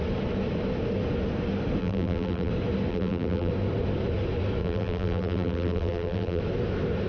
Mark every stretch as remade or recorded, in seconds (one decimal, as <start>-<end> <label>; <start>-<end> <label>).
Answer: 0.0-1.8 recorded; 1.8-2.5 remade; 2.5-2.9 recorded; 2.9-3.5 remade; 3.5-4.6 recorded; 4.6-6.4 remade; 6.4-7.1 recorded